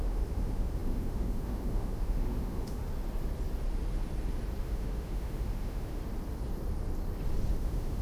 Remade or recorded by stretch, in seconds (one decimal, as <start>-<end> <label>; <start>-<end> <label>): 0.0-2.8 remade; 2.8-4.6 recorded; 4.6-6.0 remade; 6.0-7.5 recorded; 7.5-8.0 remade